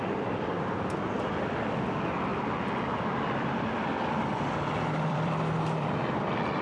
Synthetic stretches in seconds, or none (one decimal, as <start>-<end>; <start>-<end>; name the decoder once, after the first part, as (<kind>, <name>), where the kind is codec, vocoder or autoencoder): 0.0-2.3 (vocoder, BigVGAN v2); 3.0-6.6